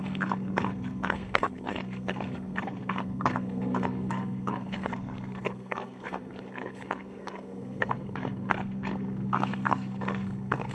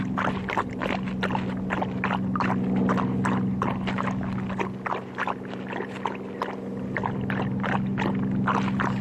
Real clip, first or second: second